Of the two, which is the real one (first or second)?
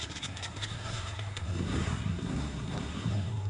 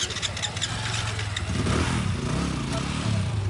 second